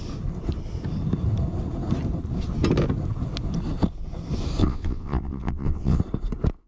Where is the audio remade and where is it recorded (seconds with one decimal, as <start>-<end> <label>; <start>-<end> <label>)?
0.0-4.6 recorded; 4.6-6.0 remade; 6.0-6.7 recorded